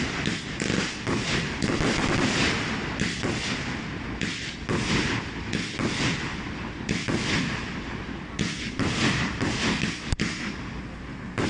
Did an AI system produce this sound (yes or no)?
no